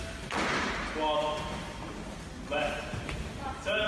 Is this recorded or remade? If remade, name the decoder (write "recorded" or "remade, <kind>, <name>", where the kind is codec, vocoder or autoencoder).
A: recorded